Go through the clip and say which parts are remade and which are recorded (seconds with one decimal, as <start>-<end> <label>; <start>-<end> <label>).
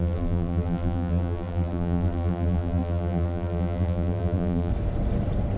0.0-4.7 remade; 4.7-5.6 recorded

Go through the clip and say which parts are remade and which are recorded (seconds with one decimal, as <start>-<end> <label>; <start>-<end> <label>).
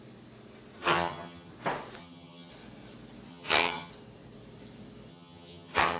0.0-0.8 recorded; 0.8-1.5 remade; 1.5-2.0 recorded; 2.0-2.5 remade; 2.5-3.3 recorded; 3.3-3.9 remade; 3.9-5.1 recorded; 5.1-6.0 remade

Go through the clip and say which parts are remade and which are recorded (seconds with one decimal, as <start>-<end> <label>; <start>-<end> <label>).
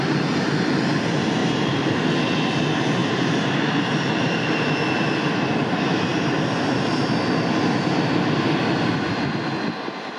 0.0-1.4 recorded; 1.4-2.1 remade; 2.1-3.0 recorded; 3.0-4.7 remade; 4.7-6.1 recorded; 6.1-6.9 remade; 6.9-10.2 recorded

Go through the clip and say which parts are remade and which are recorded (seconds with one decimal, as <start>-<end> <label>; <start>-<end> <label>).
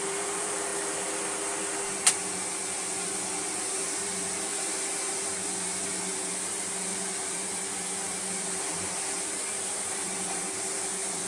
0.0-0.7 remade; 0.7-2.1 recorded; 2.1-11.3 remade